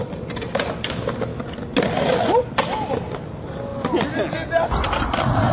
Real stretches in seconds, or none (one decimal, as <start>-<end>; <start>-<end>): 0.0-5.5

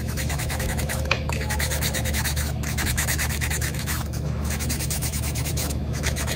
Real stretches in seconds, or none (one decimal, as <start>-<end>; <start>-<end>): none

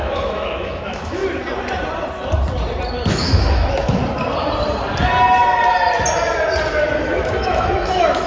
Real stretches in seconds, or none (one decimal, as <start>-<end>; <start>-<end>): 1.2-3.1; 4.0-7.0

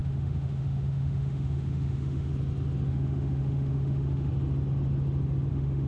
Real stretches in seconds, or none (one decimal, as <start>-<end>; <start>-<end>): 2.3-2.9; 4.3-5.5

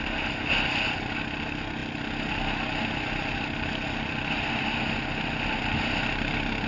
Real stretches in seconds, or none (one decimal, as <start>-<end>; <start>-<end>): 0.0-6.7

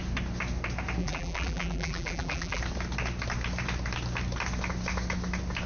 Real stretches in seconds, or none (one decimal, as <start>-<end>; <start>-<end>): 0.0-1.0; 2.6-5.7

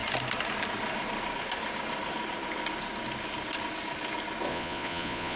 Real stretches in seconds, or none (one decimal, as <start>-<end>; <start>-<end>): 0.0-4.5

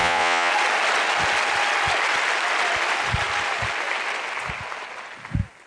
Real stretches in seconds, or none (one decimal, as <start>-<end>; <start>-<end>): 0.5-5.7